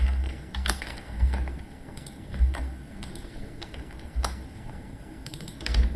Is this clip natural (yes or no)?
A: no